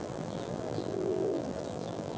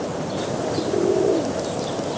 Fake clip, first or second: first